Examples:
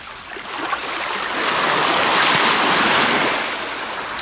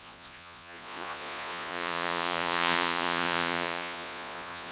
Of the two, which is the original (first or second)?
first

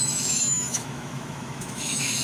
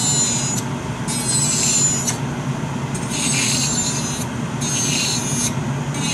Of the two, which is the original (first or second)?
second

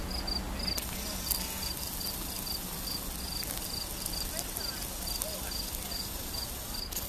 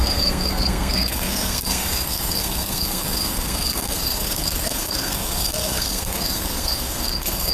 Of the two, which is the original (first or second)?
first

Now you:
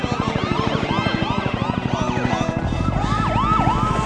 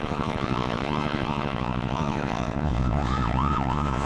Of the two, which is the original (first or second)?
first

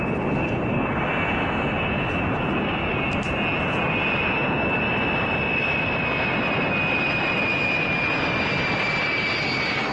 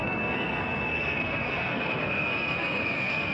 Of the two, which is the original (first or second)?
first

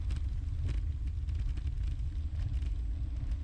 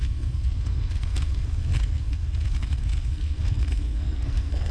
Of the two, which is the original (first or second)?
first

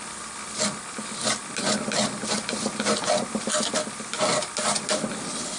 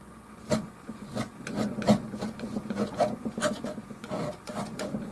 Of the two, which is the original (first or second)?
first